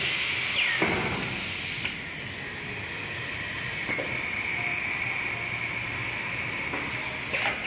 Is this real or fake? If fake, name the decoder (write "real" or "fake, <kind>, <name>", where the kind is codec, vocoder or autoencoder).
real